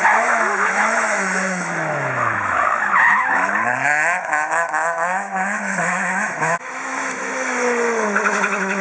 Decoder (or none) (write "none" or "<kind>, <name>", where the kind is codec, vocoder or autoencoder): autoencoder, DAC-VAE